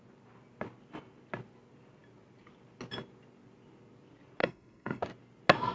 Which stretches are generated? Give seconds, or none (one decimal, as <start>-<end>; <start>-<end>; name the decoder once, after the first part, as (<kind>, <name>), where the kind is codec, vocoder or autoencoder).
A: 4.4-5.0 (codec, SNAC)